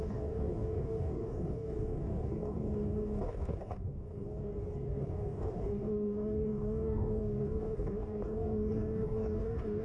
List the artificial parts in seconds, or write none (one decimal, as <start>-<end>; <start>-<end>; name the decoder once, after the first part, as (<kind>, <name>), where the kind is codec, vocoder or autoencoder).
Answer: 0.0-9.8 (codec, DAC)